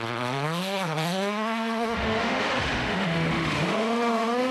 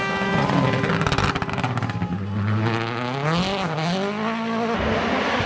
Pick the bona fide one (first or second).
second